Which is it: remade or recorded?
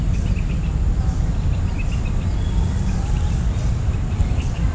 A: recorded